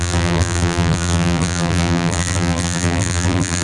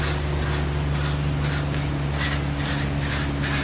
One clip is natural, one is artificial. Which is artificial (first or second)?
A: first